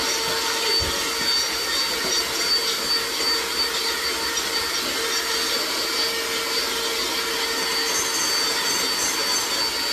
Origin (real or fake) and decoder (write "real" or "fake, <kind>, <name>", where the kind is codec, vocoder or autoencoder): real